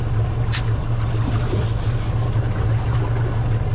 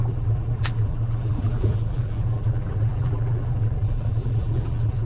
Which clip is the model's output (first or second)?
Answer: second